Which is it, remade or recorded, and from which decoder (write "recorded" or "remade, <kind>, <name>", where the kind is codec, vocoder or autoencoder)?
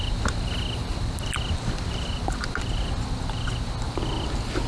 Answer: recorded